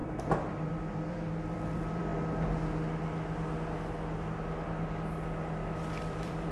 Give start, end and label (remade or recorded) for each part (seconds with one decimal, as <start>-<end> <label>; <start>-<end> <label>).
0.0-2.1 remade; 2.1-6.0 recorded; 6.0-6.5 remade